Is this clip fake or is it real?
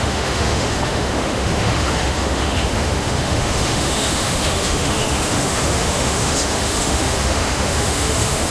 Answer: fake